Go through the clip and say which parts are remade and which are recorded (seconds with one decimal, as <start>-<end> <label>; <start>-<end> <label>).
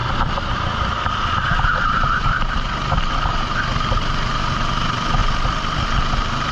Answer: 0.0-3.1 remade; 3.1-5.2 recorded; 5.2-6.0 remade; 6.0-6.5 recorded